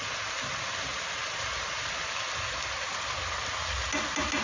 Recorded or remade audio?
recorded